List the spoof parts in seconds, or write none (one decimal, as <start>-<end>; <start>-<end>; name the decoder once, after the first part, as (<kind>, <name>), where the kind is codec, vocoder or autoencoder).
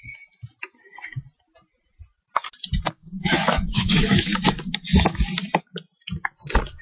3.0-4.4 (autoencoder, DAC-VAE)